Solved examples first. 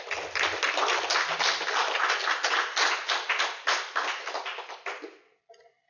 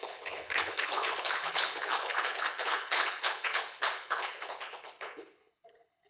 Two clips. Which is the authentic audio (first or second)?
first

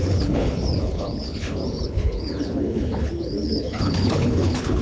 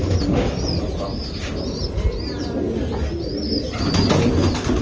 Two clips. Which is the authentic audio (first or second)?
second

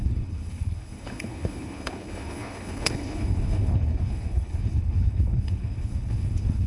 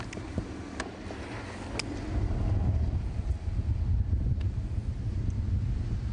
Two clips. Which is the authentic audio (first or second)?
second